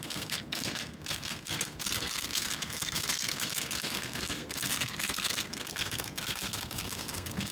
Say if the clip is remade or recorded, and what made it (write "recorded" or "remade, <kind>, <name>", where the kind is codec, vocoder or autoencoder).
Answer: remade, codec, SNAC